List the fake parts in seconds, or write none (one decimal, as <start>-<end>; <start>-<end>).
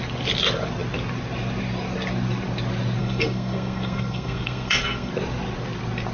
3.0-5.1